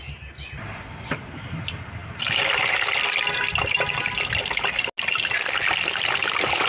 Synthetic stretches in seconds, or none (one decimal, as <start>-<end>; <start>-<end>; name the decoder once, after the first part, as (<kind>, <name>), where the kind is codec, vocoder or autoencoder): none